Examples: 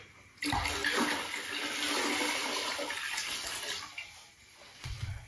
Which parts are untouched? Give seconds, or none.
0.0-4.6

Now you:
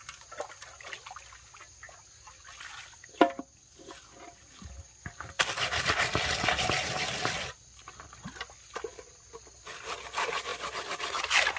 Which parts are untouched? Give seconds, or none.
0.0-11.6